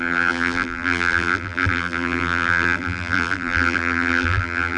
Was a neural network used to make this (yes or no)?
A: yes